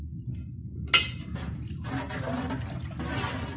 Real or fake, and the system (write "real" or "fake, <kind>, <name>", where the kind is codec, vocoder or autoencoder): real